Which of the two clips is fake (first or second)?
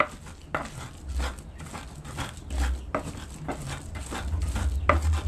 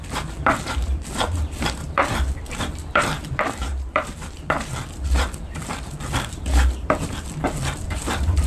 second